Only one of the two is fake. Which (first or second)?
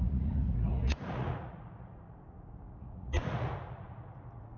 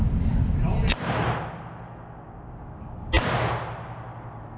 first